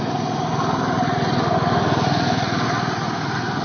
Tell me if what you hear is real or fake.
real